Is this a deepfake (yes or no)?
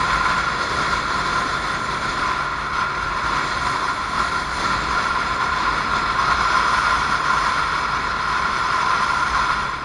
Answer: no